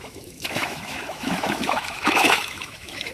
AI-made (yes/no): yes